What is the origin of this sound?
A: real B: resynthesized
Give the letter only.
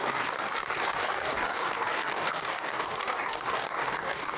B